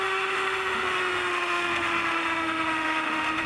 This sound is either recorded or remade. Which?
remade